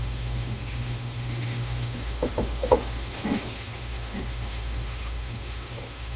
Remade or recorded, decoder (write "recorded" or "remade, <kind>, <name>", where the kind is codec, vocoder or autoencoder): remade, autoencoder, DAC-VAE